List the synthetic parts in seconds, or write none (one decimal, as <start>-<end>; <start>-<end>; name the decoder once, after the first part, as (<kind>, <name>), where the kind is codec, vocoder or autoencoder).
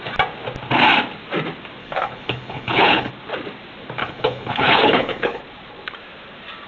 1.8-3.1 (codec, HILCodec); 4.0-5.4